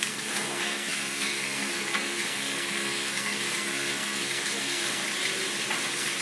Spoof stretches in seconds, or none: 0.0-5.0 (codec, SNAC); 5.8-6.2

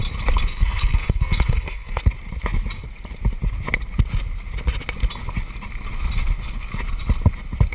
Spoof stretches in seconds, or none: 0.5-2.0 (codec, SNAC)

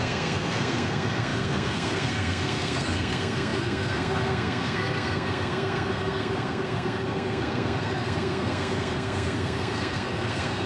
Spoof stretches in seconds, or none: 0.0-10.7 (codec, SNAC)

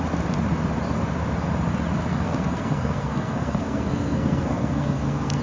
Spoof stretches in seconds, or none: 2.1-5.4 (codec, SNAC)

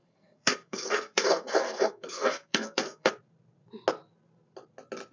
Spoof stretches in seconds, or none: 0.0-3.1 (codec, SNAC)

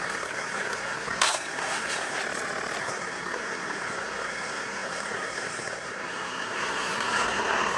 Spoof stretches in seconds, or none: 0.0-2.2 (codec, SNAC); 2.8-7.8